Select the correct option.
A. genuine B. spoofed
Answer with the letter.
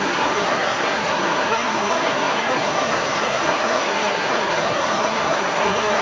B